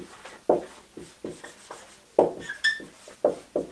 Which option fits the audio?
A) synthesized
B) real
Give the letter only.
B